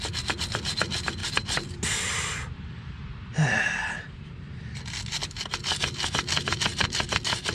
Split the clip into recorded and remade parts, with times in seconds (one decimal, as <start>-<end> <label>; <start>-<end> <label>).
0.0-1.2 recorded; 1.2-4.8 remade; 4.8-6.7 recorded; 6.7-7.5 remade